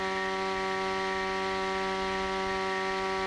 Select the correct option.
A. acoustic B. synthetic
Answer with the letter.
A